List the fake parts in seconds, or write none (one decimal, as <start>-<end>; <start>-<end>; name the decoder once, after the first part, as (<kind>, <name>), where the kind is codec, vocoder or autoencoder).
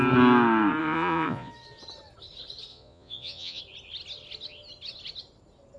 0.8-1.5 (vocoder, Vocos); 2.7-3.6